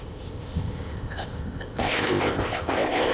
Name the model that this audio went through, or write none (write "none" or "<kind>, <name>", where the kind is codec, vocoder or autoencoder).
codec, ZipCodec